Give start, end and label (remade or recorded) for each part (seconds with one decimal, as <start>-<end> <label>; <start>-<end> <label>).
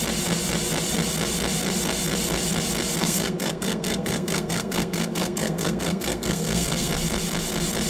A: 0.0-3.0 recorded; 3.0-6.9 remade; 6.9-7.9 recorded